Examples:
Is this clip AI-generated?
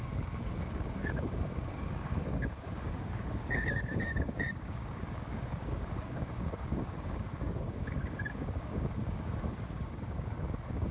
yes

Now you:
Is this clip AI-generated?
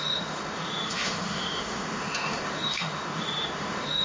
yes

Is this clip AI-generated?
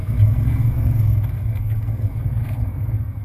yes